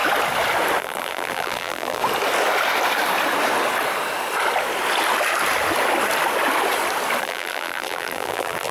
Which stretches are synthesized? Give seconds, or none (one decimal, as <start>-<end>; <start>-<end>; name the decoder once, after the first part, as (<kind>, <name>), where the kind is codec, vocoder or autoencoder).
0.8-2.0 (vocoder, BigVGAN v2); 7.2-8.7